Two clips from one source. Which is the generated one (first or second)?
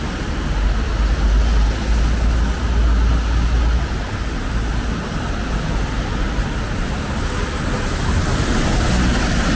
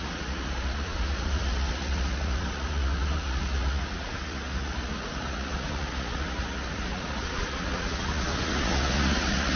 second